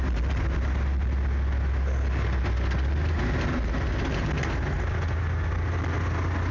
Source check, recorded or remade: recorded